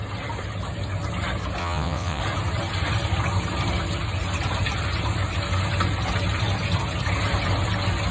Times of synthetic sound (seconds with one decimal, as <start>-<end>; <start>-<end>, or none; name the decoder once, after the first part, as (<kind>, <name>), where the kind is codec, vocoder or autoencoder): 1.6-2.2 (vocoder, WaveNeXt)